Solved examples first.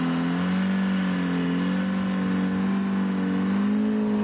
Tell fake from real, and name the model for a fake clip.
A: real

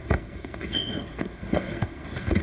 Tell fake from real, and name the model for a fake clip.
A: fake, codec, SNAC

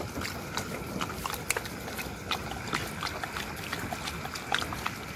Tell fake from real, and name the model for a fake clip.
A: real